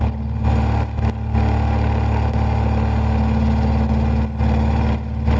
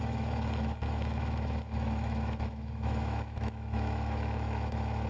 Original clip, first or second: first